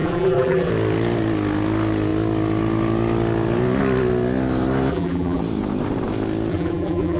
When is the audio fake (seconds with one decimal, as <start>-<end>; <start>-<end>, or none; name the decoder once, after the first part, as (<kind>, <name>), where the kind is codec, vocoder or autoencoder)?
0.0-0.7 (vocoder, BigVGAN v2); 4.9-5.4; 6.5-7.2